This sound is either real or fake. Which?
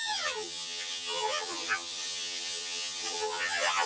fake